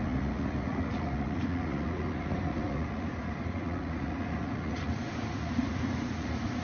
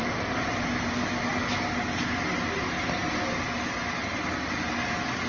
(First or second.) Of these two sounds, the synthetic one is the first